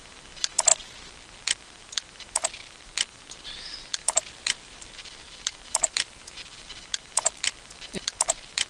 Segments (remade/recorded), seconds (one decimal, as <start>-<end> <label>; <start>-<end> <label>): 0.0-4.0 recorded; 4.0-6.7 remade; 6.7-8.7 recorded